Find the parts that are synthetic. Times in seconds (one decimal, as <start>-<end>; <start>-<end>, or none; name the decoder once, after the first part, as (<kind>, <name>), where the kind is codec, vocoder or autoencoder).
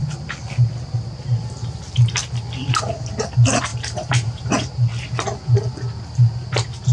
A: 3.7-4.7 (vocoder, BigVGAN v2)